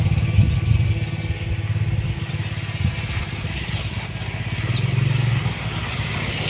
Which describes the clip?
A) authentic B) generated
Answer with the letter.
A